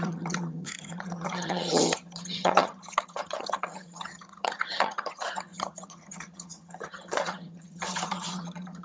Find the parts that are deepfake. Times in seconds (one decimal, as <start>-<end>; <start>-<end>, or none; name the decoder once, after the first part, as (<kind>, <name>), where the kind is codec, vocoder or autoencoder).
0.0-8.8 (vocoder, HiFi-GAN)

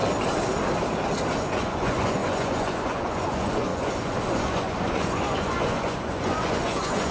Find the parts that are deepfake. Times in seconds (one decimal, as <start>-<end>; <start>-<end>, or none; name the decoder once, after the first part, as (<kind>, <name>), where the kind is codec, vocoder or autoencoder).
1.3-7.1 (vocoder, Vocos)

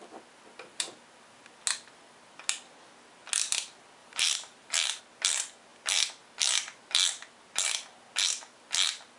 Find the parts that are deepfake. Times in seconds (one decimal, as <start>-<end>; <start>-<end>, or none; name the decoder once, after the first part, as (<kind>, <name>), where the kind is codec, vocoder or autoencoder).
4.0-5.0 (vocoder, BigVGAN v2)